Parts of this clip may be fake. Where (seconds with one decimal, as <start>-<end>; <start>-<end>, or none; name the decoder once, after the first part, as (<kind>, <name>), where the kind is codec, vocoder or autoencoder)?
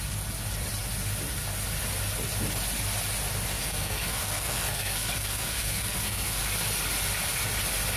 3.5-6.4 (codec, SNAC)